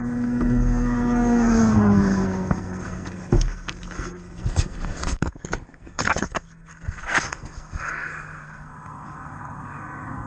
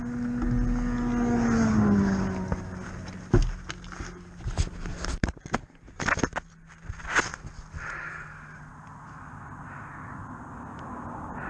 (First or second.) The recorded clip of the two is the second